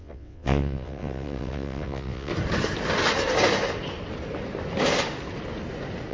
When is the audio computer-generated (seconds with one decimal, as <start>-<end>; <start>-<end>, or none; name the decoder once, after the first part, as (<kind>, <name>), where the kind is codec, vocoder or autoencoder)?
0.0-2.3 (vocoder, WaveNeXt)